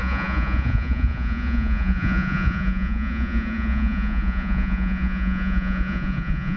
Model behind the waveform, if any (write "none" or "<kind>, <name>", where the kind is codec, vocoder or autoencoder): vocoder, Vocos